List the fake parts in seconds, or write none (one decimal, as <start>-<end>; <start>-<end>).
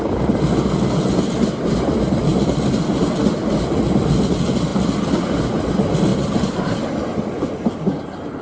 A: 6.1-7.7